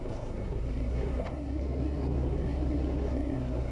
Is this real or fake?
fake